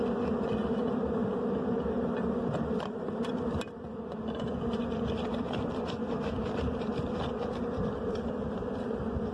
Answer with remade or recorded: recorded